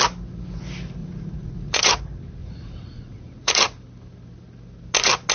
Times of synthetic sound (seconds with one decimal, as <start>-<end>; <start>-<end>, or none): 1.0-2.0; 2.4-3.5